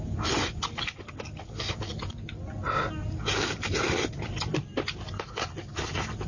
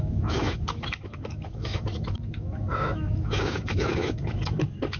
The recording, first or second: first